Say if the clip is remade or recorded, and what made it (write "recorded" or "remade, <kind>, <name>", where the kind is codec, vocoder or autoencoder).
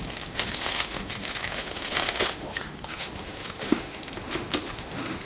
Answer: remade, autoencoder, DAC-VAE